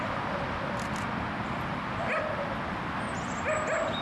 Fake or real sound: real